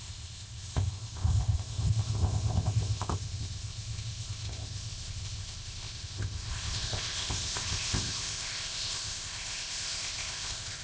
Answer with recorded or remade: remade